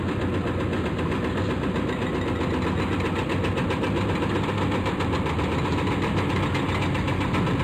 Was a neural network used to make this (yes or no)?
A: no